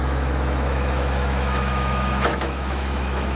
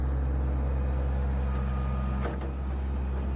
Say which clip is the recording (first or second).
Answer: second